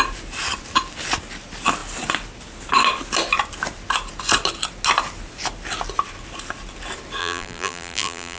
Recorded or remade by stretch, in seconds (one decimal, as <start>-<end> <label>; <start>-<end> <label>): 0.0-7.2 recorded; 7.2-8.4 remade